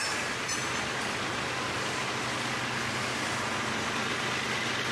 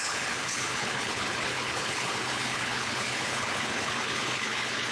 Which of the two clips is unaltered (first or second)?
first